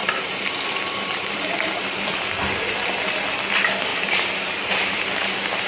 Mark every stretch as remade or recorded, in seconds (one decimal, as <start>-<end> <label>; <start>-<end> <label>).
0.0-2.2 remade; 2.2-3.9 recorded; 3.9-5.3 remade; 5.3-5.7 recorded